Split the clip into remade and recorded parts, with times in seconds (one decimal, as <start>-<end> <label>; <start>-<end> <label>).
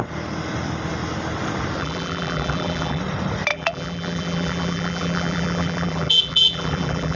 0.0-1.8 recorded; 1.8-3.0 remade; 3.0-3.5 recorded; 3.5-7.2 remade